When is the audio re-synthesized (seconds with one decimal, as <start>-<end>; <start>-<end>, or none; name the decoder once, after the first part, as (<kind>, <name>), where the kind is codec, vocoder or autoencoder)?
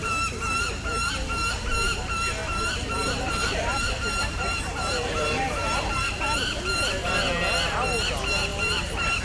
2.4-7.1 (vocoder, BigVGAN v2); 8.5-9.2